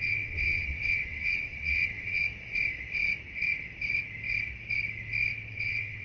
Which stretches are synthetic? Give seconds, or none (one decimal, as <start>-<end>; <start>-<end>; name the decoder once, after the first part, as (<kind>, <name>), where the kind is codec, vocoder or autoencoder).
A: 0.0-2.2 (vocoder, WaveNeXt); 5.5-6.0